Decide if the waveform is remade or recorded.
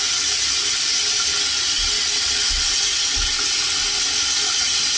recorded